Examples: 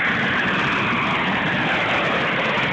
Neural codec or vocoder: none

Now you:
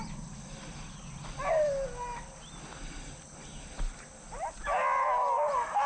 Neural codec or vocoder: none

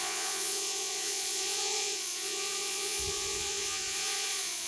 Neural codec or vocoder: vocoder, Vocos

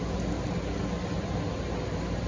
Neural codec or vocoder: none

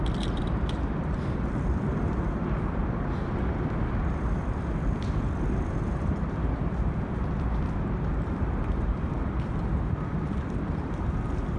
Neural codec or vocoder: vocoder, BigVGAN v2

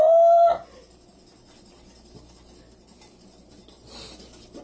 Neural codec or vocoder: none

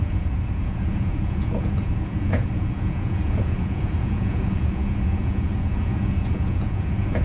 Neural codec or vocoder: vocoder, Vocos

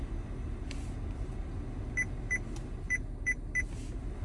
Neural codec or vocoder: none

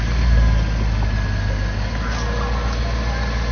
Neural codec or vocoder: none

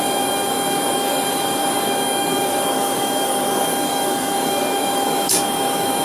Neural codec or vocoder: codec, DAC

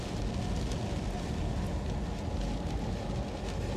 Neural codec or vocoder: none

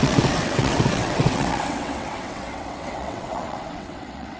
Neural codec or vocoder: vocoder, WaveNeXt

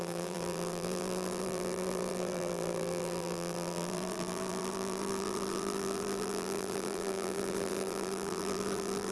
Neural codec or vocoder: vocoder, BigVGAN v2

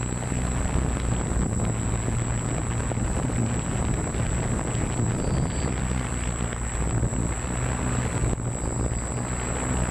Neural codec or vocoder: none